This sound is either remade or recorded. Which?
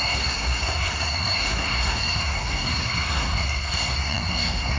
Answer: remade